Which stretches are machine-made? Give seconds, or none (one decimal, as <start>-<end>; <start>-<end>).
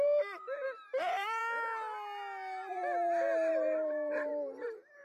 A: 0.0-1.4; 3.5-4.3